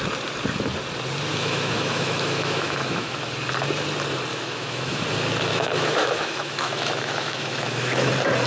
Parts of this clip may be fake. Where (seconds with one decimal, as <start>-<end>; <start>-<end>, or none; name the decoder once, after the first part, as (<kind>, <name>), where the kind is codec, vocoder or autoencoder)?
1.3-3.2 (autoencoder, DAC-VAE); 4.3-5.0; 5.5-8.1